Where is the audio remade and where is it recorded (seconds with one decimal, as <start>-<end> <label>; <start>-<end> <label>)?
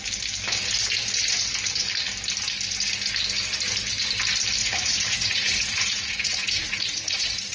0.0-4.6 recorded; 4.6-7.5 remade